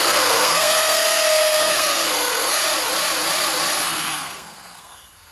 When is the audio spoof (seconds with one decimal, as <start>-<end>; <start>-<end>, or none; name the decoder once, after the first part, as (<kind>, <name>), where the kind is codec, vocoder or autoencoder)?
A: 0.0-2.6 (codec, SNAC); 3.8-5.3